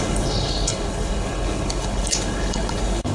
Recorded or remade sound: remade